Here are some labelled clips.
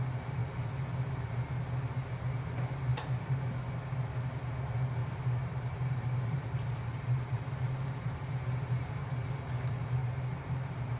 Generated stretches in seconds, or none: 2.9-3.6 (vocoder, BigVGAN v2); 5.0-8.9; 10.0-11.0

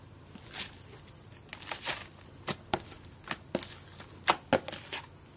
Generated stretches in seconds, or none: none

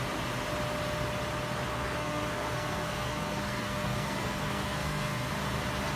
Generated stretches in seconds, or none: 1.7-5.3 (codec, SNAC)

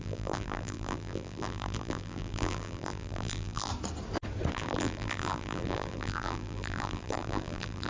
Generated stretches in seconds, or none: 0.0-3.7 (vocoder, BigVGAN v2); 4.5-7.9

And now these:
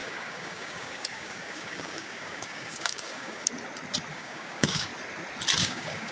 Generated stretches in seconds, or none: 0.0-3.5 (codec, DAC); 4.1-4.9; 5.6-6.1

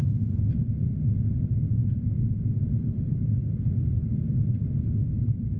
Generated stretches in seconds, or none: 1.8-2.6 (vocoder, Vocos)

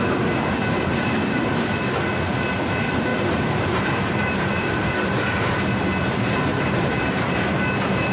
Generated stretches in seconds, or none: 3.1-5.7 (vocoder, BigVGAN v2); 6.5-7.5

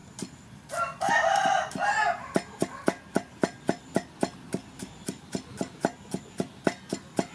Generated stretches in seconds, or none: none